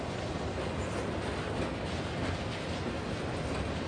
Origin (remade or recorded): recorded